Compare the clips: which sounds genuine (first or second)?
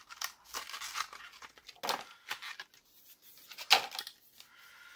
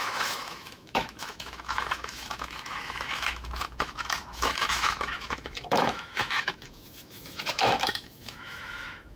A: first